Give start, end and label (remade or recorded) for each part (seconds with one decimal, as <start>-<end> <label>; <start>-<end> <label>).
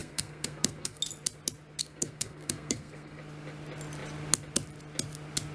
0.0-1.0 remade; 1.0-1.8 recorded; 1.8-3.2 remade; 3.2-5.5 recorded